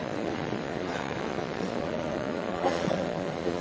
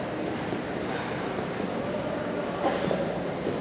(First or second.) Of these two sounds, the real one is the second